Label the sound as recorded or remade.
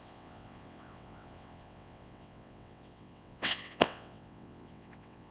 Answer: remade